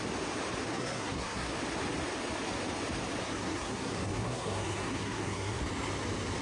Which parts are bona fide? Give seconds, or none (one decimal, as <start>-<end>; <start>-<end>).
0.0-0.7; 1.5-3.2; 5.6-6.4